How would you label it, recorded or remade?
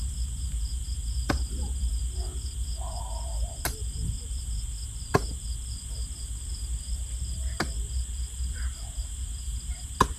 recorded